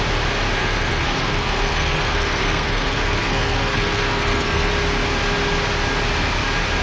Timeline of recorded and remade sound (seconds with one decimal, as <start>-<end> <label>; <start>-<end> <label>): 0.0-0.6 recorded; 0.6-4.7 remade; 4.7-6.8 recorded